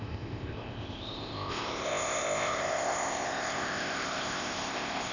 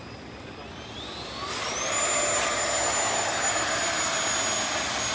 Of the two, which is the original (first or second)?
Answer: second